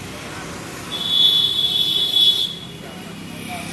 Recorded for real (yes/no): yes